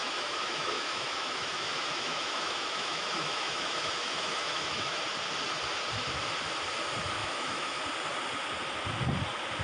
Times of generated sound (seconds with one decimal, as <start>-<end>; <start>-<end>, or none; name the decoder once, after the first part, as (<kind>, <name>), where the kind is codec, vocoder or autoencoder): 0.0-5.0 (autoencoder, DAC-VAE); 7.2-7.8